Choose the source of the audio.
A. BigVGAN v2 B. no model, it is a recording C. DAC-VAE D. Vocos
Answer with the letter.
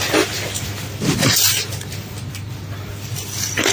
A